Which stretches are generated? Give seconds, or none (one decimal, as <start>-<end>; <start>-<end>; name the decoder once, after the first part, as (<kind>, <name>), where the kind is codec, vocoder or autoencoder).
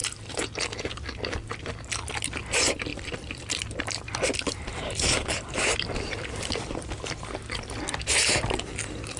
2.9-6.4 (vocoder, BigVGAN v2)